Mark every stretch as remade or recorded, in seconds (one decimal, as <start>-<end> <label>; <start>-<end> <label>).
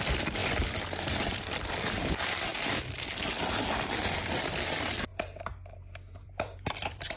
0.0-0.4 remade; 0.4-1.2 recorded; 1.2-5.1 remade; 5.1-6.2 recorded; 6.2-7.2 remade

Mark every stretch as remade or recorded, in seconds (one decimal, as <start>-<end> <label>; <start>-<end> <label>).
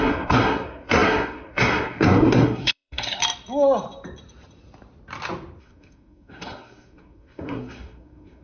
0.0-3.2 remade; 3.2-5.6 recorded; 5.6-8.4 remade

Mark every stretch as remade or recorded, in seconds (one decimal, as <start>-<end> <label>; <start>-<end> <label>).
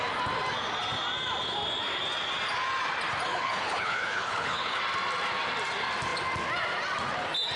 0.0-3.3 recorded; 3.3-4.8 remade; 4.8-7.6 recorded